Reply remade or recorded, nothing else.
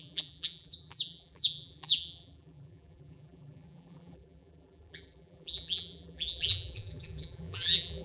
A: remade